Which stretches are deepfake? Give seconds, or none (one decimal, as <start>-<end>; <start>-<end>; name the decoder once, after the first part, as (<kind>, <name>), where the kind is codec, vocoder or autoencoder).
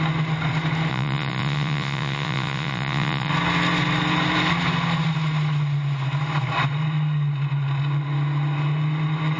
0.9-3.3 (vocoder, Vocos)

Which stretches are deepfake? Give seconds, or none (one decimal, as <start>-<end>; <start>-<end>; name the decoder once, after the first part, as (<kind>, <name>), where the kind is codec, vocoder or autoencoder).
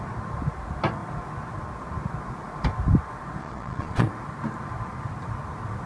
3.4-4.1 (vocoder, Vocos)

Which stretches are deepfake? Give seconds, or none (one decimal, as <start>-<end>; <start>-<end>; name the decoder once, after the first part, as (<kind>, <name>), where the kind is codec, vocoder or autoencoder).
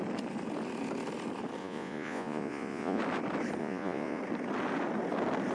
1.6-3.0 (vocoder, Vocos); 3.6-4.2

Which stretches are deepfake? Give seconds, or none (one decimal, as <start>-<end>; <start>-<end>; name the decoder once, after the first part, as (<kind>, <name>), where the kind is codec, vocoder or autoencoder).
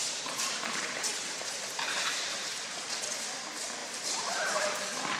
0.0-3.1 (vocoder, BigVGAN v2); 3.8-4.8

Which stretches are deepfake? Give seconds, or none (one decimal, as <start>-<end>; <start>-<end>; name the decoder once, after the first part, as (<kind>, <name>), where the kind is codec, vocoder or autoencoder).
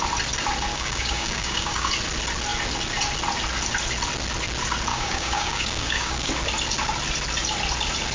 0.7-1.9 (codec, DAC); 4.9-6.3